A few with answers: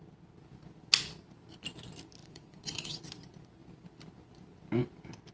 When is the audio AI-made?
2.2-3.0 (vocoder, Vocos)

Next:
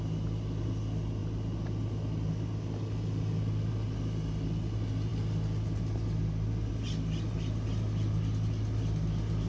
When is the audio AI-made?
none

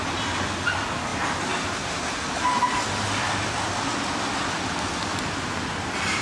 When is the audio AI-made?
1.1-4.8 (vocoder, BigVGAN v2)

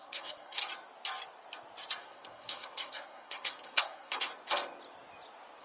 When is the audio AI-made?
0.0-0.6 (codec, SNAC); 2.0-4.3

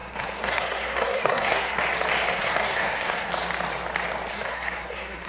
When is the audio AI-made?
0.0-1.8 (codec, SNAC); 2.3-3.3; 4.3-5.3

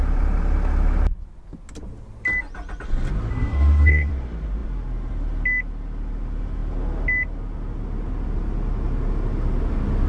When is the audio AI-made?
3.3-4.1 (codec, SNAC)

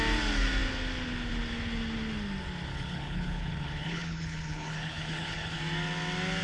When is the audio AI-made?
2.7-5.6 (codec, HILCodec)

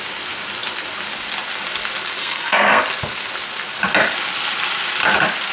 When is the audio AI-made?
2.2-2.8 (codec, SNAC)